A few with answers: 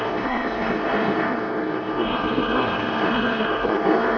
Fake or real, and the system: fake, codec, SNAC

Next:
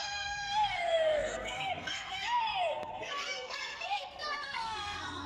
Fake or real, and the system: fake, codec, SNAC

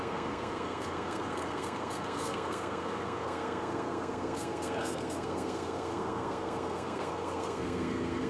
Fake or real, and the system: fake, codec, SNAC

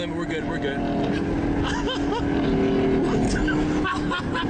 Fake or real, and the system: real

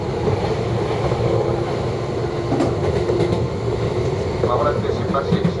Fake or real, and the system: real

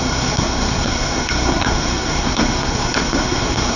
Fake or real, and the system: fake, codec, SNAC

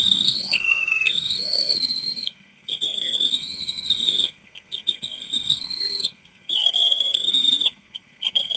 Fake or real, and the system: fake, codec, SNAC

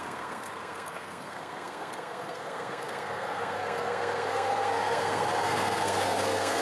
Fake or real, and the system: fake, codec, SNAC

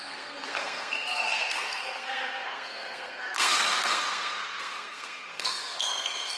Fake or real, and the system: fake, codec, SNAC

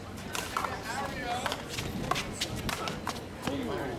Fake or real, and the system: real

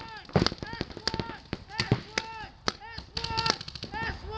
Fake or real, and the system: real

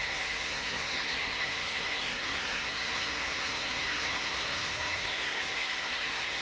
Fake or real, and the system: fake, codec, SNAC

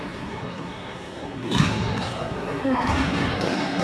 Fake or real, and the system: fake, codec, SNAC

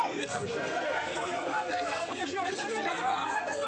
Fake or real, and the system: fake, codec, SNAC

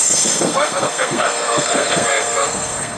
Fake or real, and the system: fake, codec, SNAC